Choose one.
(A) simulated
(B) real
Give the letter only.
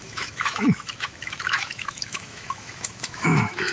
A